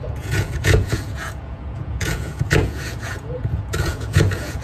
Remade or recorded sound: remade